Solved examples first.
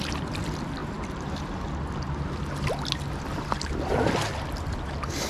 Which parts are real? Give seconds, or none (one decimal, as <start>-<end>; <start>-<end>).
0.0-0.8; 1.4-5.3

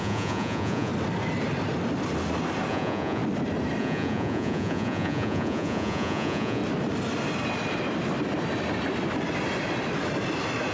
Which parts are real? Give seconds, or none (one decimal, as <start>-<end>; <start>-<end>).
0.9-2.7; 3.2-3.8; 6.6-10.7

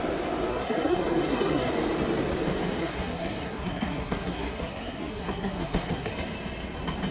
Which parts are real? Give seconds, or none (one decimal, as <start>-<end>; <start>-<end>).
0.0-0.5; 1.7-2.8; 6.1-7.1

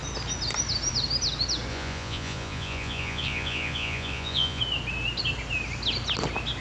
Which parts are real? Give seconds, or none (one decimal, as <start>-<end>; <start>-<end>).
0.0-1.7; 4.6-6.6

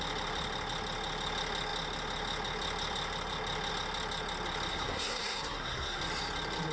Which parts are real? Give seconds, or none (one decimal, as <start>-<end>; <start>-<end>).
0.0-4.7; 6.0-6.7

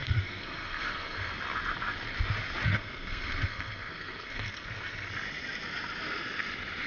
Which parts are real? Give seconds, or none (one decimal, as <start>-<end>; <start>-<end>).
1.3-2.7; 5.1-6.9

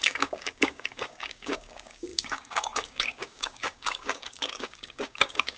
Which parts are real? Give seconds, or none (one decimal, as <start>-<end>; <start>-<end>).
none